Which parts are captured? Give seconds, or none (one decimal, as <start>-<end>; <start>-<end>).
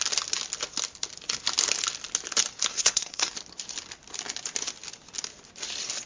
0.0-2.7; 3.3-6.1